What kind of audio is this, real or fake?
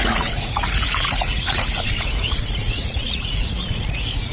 fake